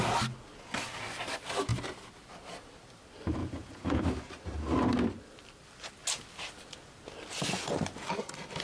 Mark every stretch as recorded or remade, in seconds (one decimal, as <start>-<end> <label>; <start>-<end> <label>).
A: 0.0-3.4 recorded; 3.4-4.0 remade; 4.0-8.6 recorded